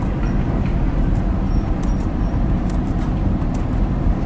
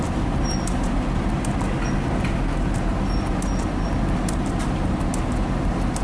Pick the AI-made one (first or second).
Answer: first